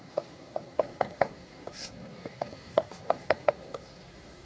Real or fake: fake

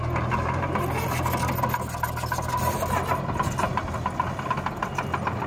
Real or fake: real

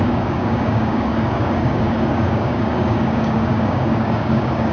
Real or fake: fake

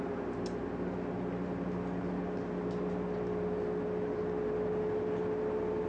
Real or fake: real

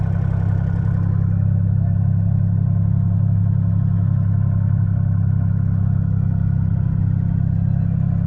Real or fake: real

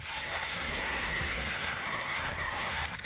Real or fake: fake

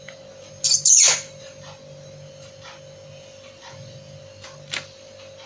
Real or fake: real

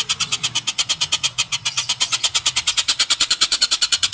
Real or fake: fake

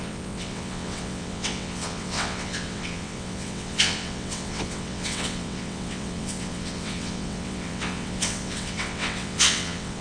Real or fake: fake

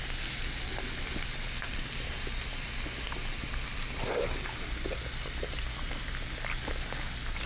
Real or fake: real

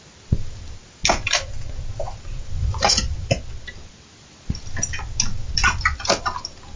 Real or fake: real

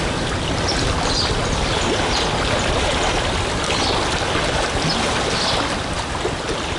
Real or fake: real